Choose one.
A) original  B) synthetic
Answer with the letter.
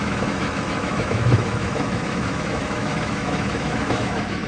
B